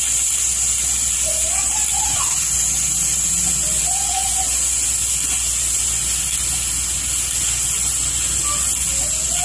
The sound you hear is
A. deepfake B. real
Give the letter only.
B